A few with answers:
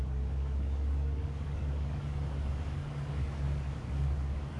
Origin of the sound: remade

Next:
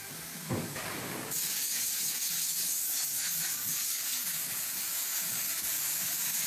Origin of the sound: remade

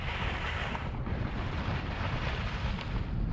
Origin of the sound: recorded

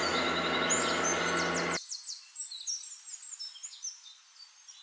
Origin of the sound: recorded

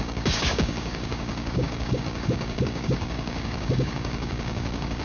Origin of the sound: remade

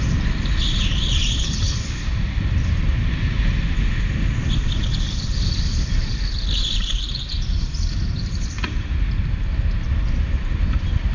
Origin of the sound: recorded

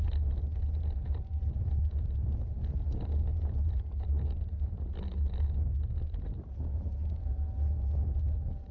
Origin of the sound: recorded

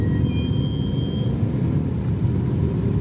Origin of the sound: recorded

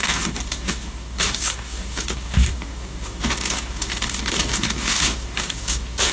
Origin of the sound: remade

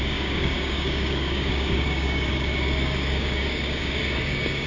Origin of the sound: remade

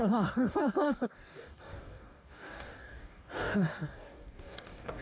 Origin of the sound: remade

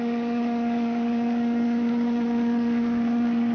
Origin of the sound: remade